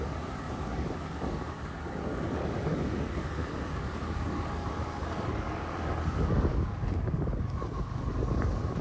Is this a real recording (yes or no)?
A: no